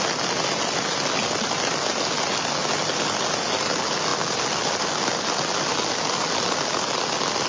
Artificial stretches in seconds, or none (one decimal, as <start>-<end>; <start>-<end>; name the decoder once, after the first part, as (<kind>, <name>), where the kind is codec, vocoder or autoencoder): none

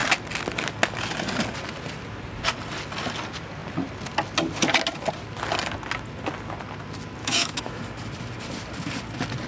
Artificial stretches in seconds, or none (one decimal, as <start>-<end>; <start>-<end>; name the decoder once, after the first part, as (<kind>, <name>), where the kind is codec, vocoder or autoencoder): 7.2-7.8 (autoencoder, DAC-VAE)

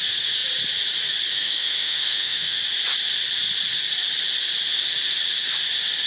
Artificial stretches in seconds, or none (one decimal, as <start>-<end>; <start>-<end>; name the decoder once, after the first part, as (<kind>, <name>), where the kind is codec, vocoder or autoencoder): 1.3-2.6 (autoencoder, DAC-VAE)

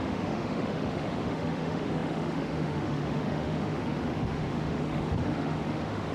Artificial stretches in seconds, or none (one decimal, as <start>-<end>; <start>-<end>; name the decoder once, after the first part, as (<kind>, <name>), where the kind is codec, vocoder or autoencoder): 0.0-6.1 (autoencoder, DAC-VAE)